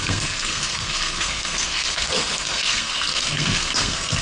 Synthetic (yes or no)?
yes